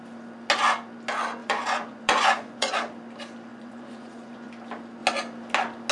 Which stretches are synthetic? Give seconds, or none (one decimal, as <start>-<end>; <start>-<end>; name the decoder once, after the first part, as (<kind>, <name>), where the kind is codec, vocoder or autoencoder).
1.4-2.7 (vocoder, Vocos); 3.5-4.5

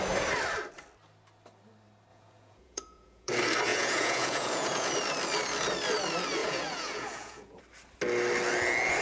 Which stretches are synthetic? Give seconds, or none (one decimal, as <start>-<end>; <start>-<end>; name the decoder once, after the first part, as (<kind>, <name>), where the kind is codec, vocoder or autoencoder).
2.1-3.3 (vocoder, Vocos); 3.7-4.9; 6.4-7.6